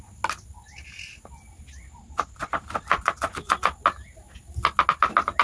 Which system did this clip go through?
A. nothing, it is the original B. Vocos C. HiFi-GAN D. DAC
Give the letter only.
A